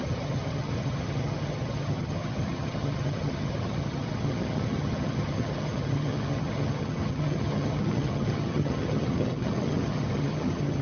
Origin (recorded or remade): remade